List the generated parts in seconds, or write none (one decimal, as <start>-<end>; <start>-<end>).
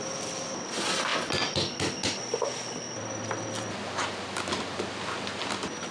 none